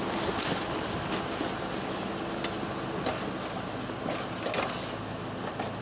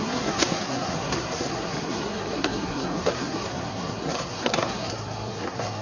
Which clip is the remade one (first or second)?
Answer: second